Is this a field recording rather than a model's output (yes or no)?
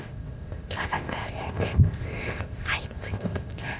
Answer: no